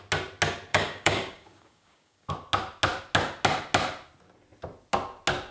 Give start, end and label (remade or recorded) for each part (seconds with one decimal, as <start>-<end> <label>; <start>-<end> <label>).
0.0-0.7 recorded; 0.7-2.3 remade; 2.3-5.5 recorded